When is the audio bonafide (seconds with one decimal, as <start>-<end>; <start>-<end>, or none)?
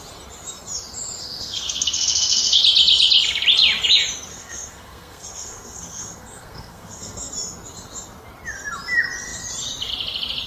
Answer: 0.0-1.2; 2.6-4.3; 7.3-10.5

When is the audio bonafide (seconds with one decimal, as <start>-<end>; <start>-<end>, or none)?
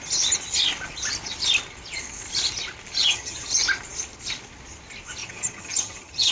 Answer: 0.0-3.0; 3.5-5.2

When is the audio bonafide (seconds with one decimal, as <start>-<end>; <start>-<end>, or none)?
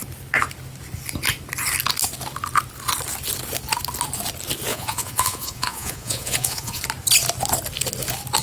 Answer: 0.0-4.7; 6.8-8.4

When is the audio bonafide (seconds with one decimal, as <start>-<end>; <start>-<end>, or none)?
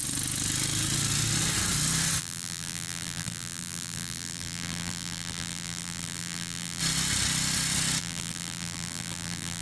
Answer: 0.0-2.2; 6.8-8.0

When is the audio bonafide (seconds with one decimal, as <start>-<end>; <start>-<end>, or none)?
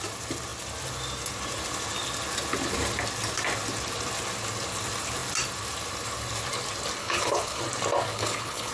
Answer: 0.0-7.0; 7.6-8.1